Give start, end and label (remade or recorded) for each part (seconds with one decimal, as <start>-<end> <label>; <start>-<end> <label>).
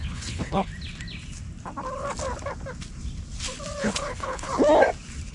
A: 0.0-0.7 remade; 0.7-3.8 recorded; 3.8-4.5 remade; 4.5-5.3 recorded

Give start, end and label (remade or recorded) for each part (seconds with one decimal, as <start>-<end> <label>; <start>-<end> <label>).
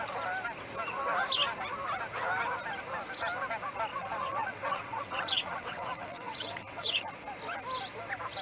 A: 0.0-3.9 recorded; 3.9-7.1 remade; 7.1-8.4 recorded